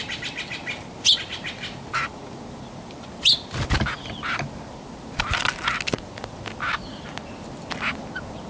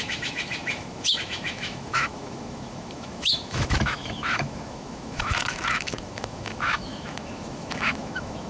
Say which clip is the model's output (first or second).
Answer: second